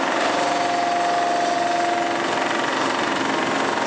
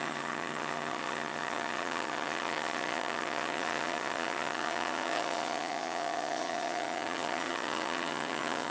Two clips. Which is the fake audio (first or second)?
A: second